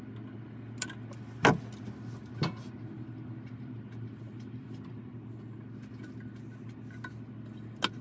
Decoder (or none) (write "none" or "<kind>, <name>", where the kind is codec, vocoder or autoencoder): none